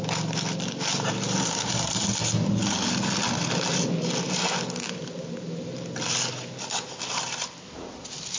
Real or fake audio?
real